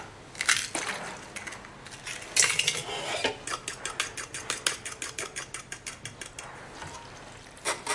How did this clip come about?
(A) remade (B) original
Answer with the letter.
B